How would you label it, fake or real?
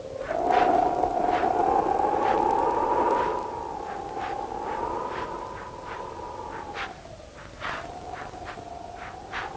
real